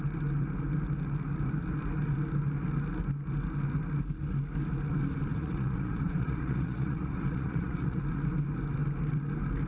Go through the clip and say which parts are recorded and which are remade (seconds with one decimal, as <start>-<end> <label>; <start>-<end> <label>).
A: 0.0-5.3 recorded; 5.3-8.0 remade; 8.0-9.7 recorded